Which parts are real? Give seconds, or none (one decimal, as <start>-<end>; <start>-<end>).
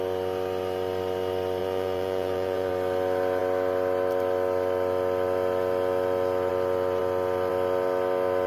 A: 0.0-1.6; 2.7-8.5